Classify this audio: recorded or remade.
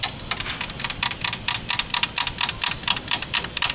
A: remade